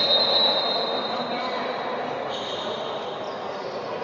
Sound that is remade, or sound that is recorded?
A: recorded